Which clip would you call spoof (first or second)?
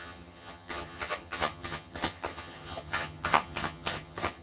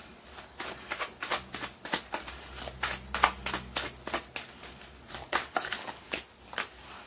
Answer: first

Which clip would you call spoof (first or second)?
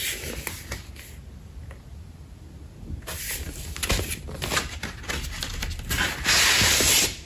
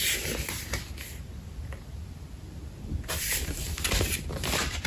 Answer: second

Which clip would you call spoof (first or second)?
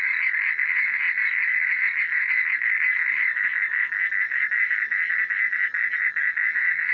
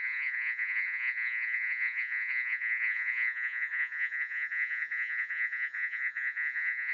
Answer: second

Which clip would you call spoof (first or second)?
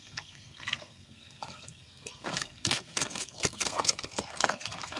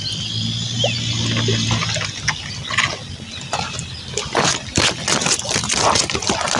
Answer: first